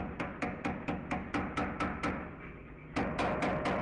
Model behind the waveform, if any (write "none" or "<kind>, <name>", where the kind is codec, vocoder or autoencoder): none